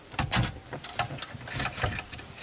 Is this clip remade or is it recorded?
recorded